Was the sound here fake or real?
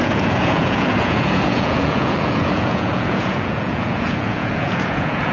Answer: fake